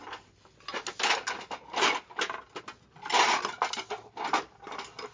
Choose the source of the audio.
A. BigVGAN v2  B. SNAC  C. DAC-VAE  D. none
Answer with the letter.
D